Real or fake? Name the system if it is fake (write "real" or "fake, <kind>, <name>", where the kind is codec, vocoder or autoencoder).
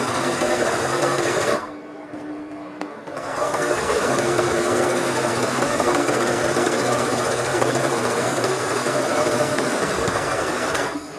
fake, codec, SNAC